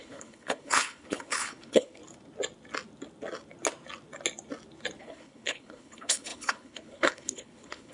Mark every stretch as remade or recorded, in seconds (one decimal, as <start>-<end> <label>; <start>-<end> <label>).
0.0-2.0 remade; 2.0-5.0 recorded; 5.0-7.9 remade